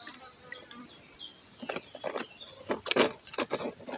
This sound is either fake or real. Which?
real